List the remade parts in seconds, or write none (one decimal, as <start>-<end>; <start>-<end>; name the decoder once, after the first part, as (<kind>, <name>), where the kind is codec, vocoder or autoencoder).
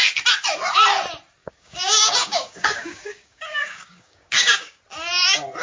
1.4-4.8 (codec, DAC)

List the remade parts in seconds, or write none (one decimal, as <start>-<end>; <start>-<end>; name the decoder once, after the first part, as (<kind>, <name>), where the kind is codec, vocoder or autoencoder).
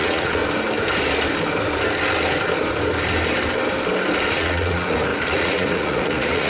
0.0-0.4 (vocoder, Vocos); 4.3-6.5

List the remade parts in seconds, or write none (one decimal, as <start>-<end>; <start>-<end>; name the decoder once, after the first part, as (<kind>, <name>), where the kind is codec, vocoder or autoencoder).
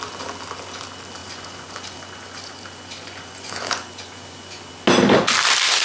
1.2-4.7 (vocoder, Vocos)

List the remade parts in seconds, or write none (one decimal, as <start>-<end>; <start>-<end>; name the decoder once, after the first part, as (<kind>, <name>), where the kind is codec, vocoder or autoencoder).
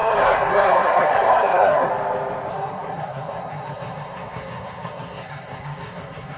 0.0-1.9 (codec, SNAC); 2.5-6.4